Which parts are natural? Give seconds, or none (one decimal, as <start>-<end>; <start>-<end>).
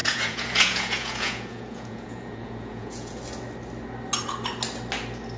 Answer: 3.2-5.4